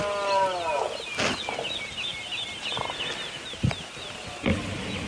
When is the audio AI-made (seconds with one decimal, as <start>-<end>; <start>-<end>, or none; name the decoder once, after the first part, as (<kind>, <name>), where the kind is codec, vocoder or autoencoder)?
none